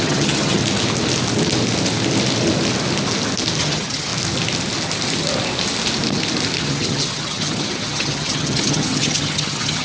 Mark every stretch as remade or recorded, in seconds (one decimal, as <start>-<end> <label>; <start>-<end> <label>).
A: 0.0-0.6 remade; 0.6-3.6 recorded; 3.6-4.1 remade; 4.1-6.6 recorded; 6.6-9.8 remade